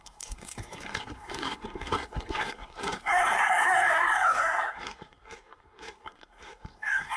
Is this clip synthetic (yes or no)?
yes